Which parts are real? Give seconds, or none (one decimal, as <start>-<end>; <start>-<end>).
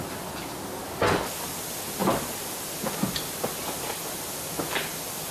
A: 0.0-5.3